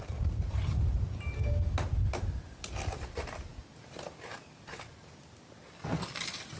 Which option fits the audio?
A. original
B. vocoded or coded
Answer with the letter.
A